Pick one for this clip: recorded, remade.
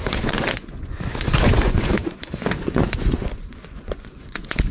remade